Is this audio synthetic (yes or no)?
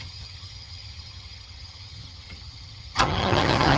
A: yes